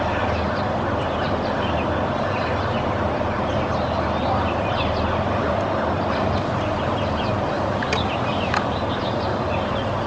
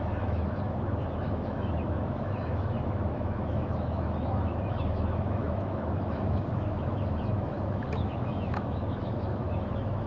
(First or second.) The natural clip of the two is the first